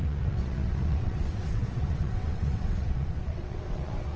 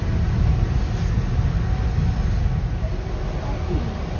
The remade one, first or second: first